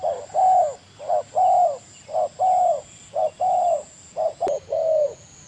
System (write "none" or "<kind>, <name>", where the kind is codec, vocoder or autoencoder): none